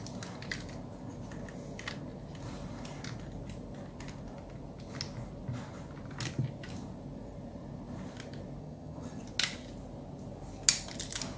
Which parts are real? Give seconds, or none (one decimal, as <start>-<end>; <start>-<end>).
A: 0.0-8.6; 9.2-11.4